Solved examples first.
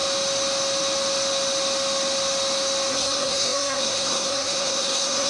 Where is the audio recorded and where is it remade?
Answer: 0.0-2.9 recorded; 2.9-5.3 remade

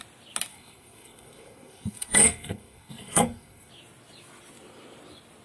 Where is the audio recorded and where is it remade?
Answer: 0.0-0.5 recorded; 0.5-3.7 remade; 3.7-5.4 recorded

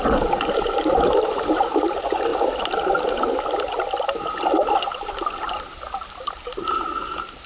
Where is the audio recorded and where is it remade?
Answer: 0.0-7.5 recorded